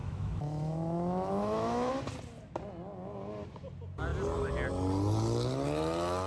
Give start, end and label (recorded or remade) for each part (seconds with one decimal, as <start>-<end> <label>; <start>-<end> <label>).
0.0-1.9 remade; 1.9-6.3 recorded